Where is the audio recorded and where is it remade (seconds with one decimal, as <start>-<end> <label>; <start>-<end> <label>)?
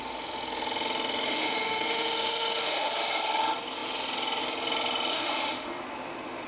0.0-1.3 recorded; 1.3-2.9 remade; 2.9-5.1 recorded; 5.1-5.8 remade; 5.8-6.5 recorded